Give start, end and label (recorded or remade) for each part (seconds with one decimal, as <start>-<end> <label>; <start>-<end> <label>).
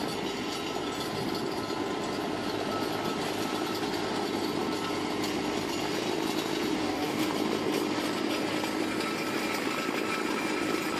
0.0-6.8 recorded; 6.8-7.3 remade; 7.3-11.0 recorded